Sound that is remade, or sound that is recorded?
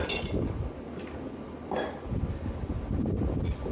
recorded